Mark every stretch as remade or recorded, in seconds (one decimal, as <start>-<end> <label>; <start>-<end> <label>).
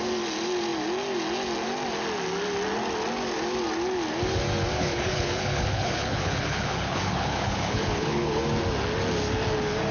0.0-4.8 recorded; 4.8-8.4 remade; 8.4-9.9 recorded